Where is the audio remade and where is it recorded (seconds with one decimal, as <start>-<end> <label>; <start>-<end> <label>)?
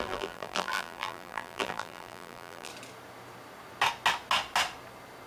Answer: 0.0-2.7 remade; 2.7-5.3 recorded